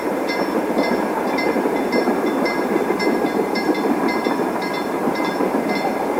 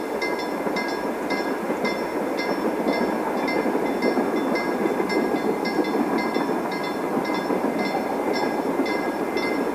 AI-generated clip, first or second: first